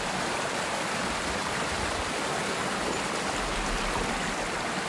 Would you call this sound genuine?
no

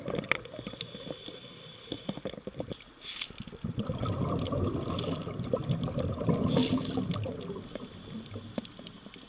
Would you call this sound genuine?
yes